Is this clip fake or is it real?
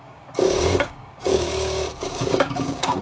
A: fake